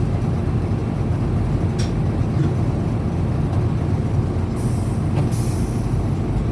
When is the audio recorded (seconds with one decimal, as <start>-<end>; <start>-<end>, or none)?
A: 0.0-6.5